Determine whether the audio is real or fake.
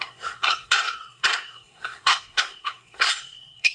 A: fake